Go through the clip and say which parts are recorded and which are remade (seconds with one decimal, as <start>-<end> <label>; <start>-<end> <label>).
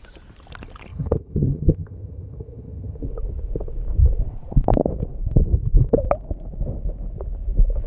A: 0.0-0.9 recorded; 0.9-3.0 remade; 3.0-7.9 recorded